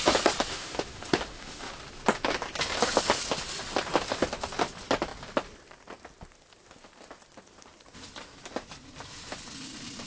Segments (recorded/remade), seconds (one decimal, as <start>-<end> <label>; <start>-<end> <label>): 0.0-0.5 recorded; 0.5-1.7 remade; 1.7-10.1 recorded